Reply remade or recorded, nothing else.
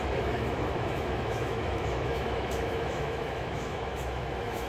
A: remade